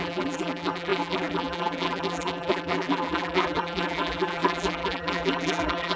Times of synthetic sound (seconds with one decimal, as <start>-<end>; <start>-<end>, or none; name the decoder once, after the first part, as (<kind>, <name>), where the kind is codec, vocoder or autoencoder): 0.0-6.0 (vocoder, BigVGAN v2)